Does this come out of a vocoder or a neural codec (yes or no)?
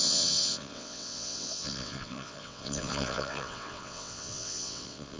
yes